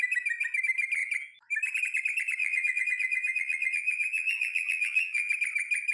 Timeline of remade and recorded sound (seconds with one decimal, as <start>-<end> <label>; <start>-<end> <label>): 0.0-2.4 recorded; 2.4-5.3 remade; 5.3-5.9 recorded